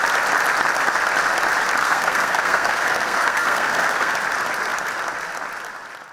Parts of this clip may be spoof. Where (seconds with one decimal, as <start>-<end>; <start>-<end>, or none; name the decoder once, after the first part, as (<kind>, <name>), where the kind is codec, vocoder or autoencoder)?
1.8-4.1 (codec, SNAC)